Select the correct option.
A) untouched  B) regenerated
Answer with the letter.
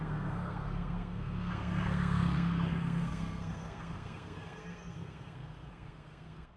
B